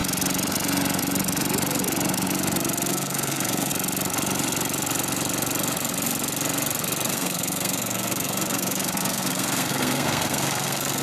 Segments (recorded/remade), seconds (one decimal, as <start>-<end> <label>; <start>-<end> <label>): 0.0-2.9 recorded; 2.9-3.7 remade; 3.7-7.1 recorded; 7.1-11.0 remade